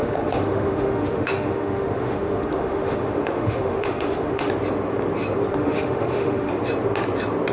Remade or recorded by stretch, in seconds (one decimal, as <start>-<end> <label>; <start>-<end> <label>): 0.0-4.5 remade; 4.5-5.5 recorded; 5.5-6.5 remade; 6.5-7.5 recorded